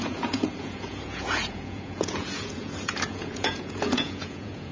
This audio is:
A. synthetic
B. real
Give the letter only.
A